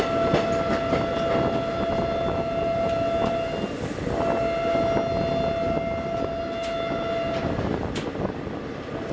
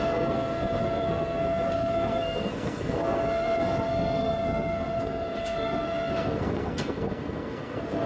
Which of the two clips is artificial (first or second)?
second